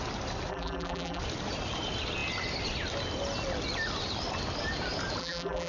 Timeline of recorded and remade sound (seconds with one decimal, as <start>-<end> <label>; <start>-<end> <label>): 0.0-0.5 recorded; 0.5-1.2 remade; 1.2-5.2 recorded; 5.2-5.7 remade